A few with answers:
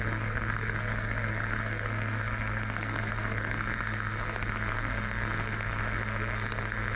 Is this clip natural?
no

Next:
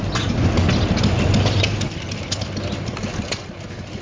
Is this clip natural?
yes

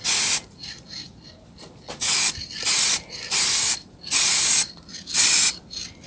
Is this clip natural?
no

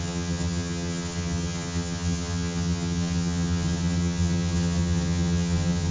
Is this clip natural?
no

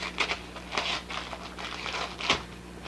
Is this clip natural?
yes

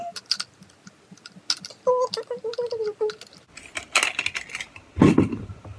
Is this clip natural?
yes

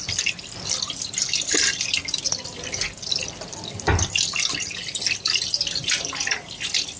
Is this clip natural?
yes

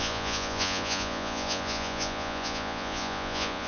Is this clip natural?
no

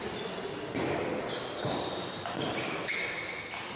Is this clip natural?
yes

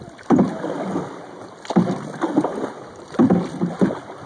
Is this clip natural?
yes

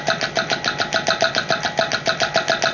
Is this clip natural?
yes